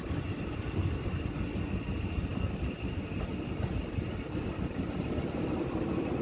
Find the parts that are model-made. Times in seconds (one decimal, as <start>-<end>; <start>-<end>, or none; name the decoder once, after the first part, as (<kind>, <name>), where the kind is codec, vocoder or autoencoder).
0.0-6.2 (vocoder, BigVGAN v2)